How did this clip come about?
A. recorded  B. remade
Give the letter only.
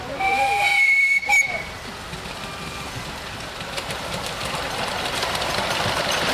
B